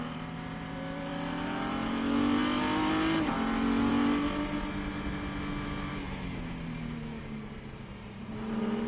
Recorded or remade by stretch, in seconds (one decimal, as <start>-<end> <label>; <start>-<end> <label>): 0.0-8.9 recorded